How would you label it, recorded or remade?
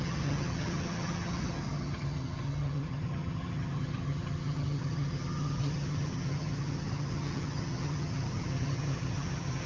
remade